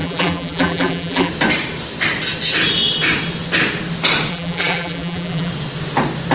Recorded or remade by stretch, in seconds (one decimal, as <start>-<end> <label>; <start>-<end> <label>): 0.0-1.3 remade; 1.3-4.3 recorded; 4.3-5.5 remade; 5.5-6.3 recorded